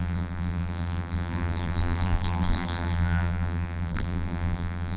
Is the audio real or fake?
fake